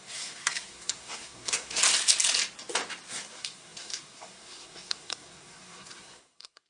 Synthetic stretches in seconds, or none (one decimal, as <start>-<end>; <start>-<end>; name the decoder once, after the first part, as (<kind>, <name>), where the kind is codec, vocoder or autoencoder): 0.0-1.8 (codec, SNAC); 3.1-6.7